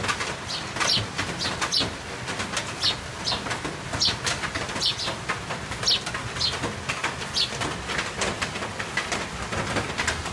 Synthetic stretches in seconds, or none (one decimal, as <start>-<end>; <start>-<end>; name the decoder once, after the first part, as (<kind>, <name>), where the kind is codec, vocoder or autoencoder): none